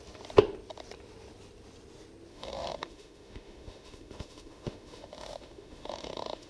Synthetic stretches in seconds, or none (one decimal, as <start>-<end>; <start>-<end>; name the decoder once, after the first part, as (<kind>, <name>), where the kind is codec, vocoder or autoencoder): 2.3-6.5 (autoencoder, DAC-VAE)